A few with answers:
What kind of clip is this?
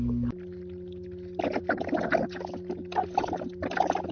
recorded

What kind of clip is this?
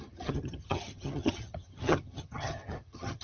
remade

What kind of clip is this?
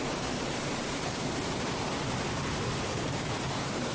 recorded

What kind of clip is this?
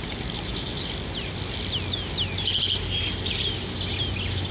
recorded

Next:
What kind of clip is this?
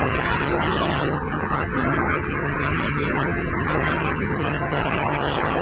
remade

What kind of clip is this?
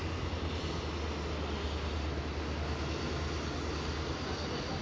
recorded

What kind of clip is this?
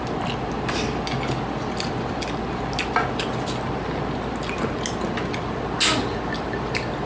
recorded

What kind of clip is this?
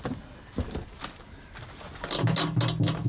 recorded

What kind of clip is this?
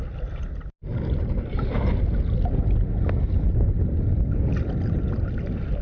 recorded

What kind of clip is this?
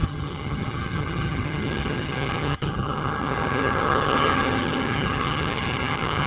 remade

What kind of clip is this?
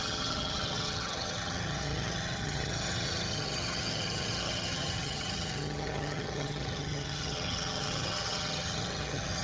remade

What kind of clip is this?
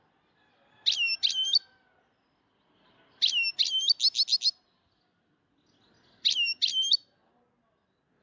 recorded